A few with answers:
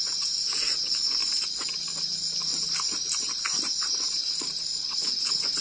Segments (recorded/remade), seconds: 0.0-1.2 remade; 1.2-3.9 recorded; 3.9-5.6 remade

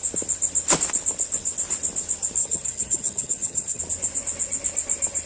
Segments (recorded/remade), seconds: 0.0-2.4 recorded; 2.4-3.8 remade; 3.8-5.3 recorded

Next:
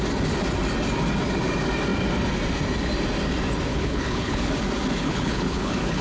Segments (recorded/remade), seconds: 0.0-3.7 recorded; 3.7-4.5 remade; 4.5-5.0 recorded; 5.0-6.0 remade

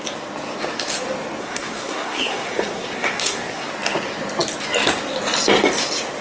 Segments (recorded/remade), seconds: 0.0-1.4 recorded; 1.4-3.7 remade; 3.7-6.2 recorded

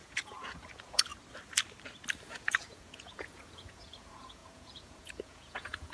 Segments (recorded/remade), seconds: 0.0-1.1 remade; 1.1-2.3 recorded; 2.3-5.9 remade

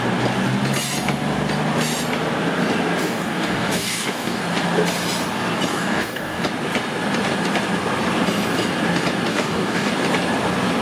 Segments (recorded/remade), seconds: 0.0-3.0 recorded; 3.0-4.4 remade; 4.4-5.7 recorded; 5.7-6.4 remade; 6.4-9.3 recorded; 9.3-9.9 remade; 9.9-10.8 recorded

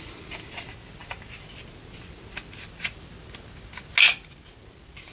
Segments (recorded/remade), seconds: 0.0-5.1 recorded